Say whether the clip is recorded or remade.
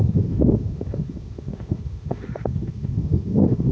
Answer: remade